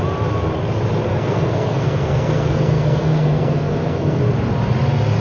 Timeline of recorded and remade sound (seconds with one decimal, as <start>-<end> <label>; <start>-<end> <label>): 0.0-1.1 recorded; 1.1-4.2 remade; 4.2-5.2 recorded